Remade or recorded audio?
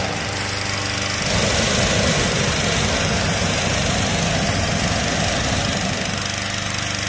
recorded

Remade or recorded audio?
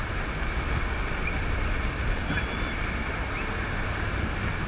recorded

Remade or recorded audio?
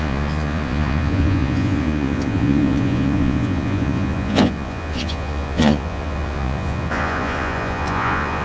remade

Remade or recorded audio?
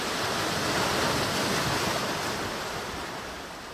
recorded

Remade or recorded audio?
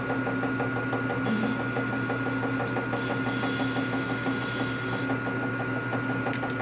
recorded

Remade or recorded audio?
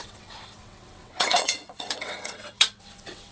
remade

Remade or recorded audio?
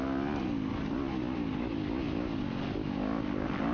recorded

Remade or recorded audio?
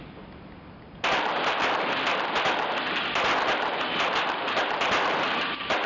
recorded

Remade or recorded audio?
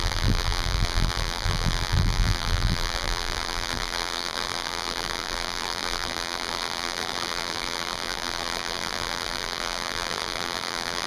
remade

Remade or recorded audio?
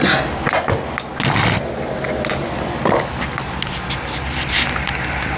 recorded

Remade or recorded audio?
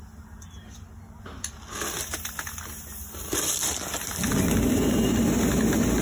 recorded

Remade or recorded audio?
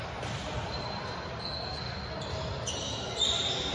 recorded